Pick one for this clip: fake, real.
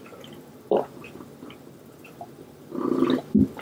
real